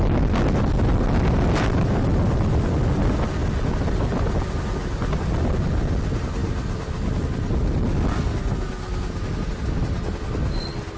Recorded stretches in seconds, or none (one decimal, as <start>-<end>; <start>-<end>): 0.0-11.0